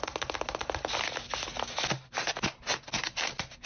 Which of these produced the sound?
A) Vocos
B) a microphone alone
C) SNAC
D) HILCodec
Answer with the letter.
B